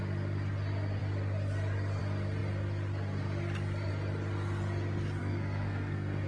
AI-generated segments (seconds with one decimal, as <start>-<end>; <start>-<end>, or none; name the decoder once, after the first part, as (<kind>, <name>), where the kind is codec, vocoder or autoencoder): 5.2-6.3 (codec, SNAC)